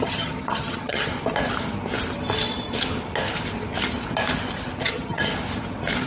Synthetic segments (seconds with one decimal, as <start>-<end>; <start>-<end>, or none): 0.0-1.1; 4.8-5.3